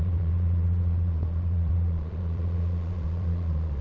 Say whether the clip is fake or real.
fake